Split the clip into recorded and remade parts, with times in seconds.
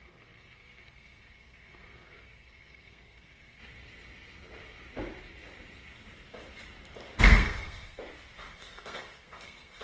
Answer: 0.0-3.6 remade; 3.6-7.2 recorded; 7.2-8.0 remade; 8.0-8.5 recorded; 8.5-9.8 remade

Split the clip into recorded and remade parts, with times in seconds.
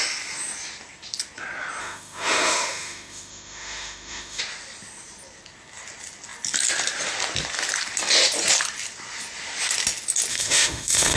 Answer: 0.0-1.8 recorded; 1.8-4.4 remade; 4.4-10.3 recorded; 10.3-11.2 remade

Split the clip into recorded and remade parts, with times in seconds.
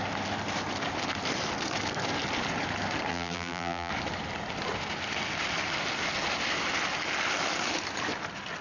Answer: 0.0-3.1 recorded; 3.1-3.9 remade; 3.9-8.6 recorded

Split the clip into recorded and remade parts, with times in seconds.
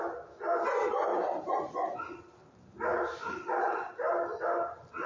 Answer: 0.0-1.1 recorded; 1.1-1.6 remade; 1.6-2.4 recorded; 2.4-4.4 remade; 4.4-5.1 recorded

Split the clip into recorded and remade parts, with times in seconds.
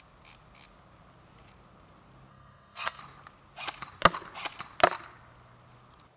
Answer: 0.0-2.3 recorded; 2.3-3.0 remade; 3.0-6.2 recorded